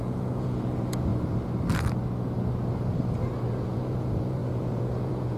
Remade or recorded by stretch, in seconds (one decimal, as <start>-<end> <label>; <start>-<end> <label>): 0.0-1.1 remade; 1.1-3.5 recorded; 3.5-5.4 remade